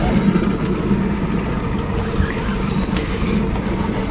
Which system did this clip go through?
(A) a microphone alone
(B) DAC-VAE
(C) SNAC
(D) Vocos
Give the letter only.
A